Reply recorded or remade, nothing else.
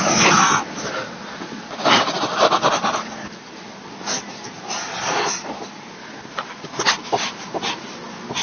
recorded